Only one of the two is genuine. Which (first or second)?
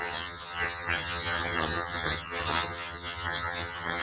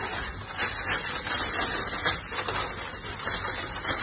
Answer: second